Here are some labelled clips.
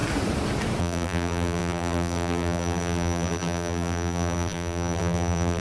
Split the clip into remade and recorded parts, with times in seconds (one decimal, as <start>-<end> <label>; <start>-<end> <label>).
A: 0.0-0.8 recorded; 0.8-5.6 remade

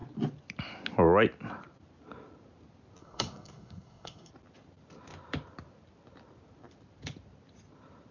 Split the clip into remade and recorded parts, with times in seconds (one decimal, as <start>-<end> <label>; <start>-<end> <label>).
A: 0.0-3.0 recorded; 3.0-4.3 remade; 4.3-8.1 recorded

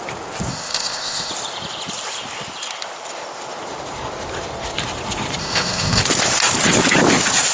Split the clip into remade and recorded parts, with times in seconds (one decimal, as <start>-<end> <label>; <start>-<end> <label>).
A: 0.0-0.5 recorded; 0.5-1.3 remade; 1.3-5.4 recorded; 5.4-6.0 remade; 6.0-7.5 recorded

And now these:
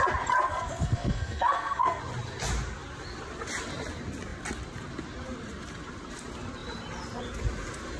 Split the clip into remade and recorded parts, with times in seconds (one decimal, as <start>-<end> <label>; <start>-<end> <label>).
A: 0.0-0.5 recorded; 0.5-2.0 remade; 2.0-8.0 recorded

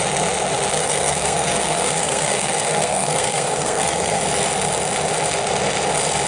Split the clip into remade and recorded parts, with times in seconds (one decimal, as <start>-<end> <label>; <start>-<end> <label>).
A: 0.0-0.8 recorded; 0.8-4.2 remade; 4.2-6.3 recorded